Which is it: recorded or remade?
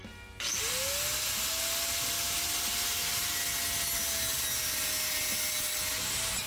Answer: recorded